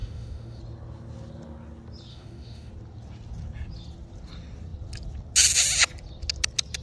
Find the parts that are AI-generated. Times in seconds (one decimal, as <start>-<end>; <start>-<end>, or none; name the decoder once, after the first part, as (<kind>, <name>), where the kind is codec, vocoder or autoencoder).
0.0-0.6 (autoencoder, DAC-VAE); 2.1-2.7